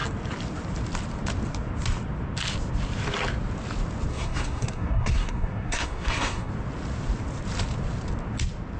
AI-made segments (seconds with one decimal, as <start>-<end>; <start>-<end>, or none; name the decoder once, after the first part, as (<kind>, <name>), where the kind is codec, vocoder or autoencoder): 4.1-6.5 (codec, SNAC)